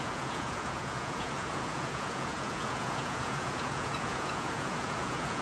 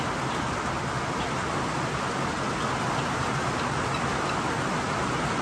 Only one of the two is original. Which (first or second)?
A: second